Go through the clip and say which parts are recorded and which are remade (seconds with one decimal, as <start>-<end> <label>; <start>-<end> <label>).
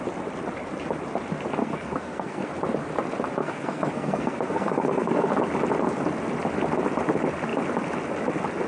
0.0-1.6 recorded; 1.6-2.5 remade; 2.5-3.4 recorded; 3.4-5.3 remade; 5.3-8.7 recorded